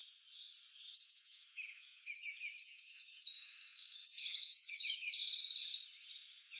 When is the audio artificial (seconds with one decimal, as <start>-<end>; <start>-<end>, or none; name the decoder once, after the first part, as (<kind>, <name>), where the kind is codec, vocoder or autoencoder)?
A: 0.9-5.2 (autoencoder, DAC-VAE)